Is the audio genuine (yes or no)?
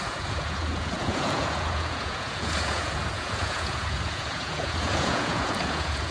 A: no